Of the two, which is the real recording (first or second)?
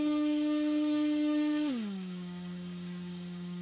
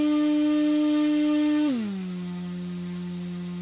second